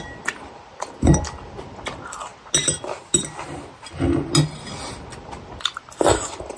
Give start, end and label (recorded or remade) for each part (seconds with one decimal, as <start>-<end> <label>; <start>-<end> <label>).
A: 0.0-2.3 remade; 2.3-5.2 recorded; 5.2-6.6 remade